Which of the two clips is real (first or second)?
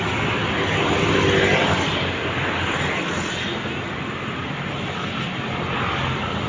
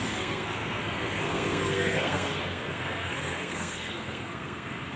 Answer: first